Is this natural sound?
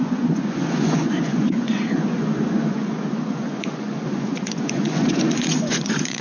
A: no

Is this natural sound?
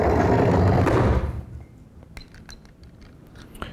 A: yes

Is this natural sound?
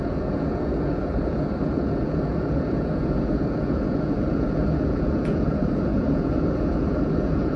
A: no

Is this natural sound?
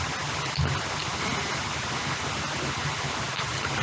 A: yes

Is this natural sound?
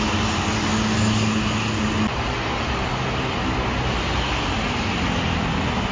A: yes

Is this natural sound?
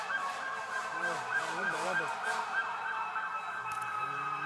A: no